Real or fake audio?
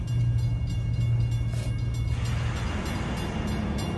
real